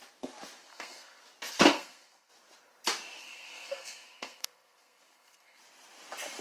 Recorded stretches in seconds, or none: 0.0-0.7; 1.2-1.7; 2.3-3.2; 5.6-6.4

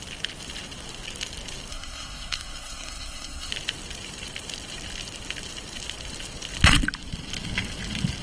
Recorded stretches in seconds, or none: 0.0-1.7; 3.5-8.2